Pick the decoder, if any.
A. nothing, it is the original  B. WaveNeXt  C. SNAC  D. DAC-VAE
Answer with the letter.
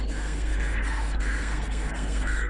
C